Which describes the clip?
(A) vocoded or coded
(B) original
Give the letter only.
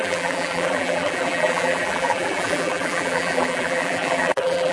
A